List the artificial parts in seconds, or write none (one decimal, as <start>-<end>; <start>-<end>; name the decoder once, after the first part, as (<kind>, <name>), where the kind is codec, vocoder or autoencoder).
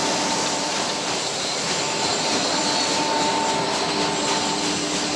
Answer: 0.0-1.4 (vocoder, BigVGAN v2); 2.0-3.5